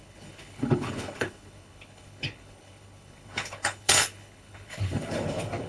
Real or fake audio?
fake